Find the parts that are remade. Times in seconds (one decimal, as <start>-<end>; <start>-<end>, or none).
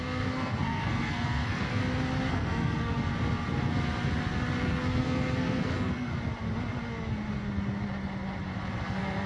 0.0-1.8; 2.3-3.1; 4.6-6.1; 8.8-9.3